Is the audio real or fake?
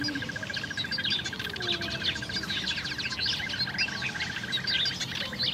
real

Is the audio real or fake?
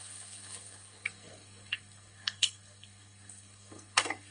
fake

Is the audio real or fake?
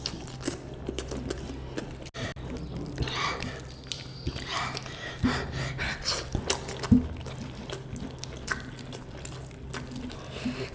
real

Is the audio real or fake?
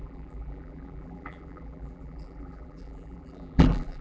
fake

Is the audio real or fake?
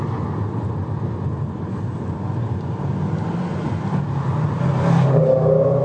real